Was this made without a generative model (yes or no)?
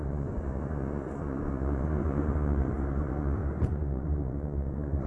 no